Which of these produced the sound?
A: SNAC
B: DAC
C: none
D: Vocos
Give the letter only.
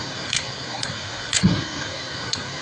A